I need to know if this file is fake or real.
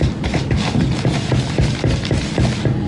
real